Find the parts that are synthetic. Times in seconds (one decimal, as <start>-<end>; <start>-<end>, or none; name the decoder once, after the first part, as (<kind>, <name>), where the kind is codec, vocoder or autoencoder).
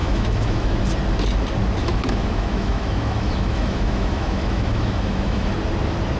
0.0-0.7 (autoencoder, DAC-VAE); 1.8-5.5